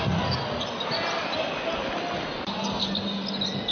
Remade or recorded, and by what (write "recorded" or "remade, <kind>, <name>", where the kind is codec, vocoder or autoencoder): recorded